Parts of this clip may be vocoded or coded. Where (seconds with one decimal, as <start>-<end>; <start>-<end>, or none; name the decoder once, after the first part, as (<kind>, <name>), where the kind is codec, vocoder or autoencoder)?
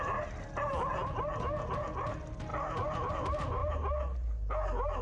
none